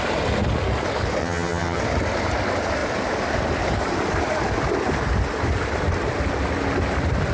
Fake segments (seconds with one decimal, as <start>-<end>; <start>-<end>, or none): 1.2-1.8